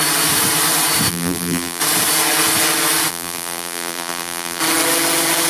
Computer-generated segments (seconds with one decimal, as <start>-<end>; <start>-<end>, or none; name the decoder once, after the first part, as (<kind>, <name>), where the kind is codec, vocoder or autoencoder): 1.1-1.8 (vocoder, BigVGAN v2); 3.1-4.6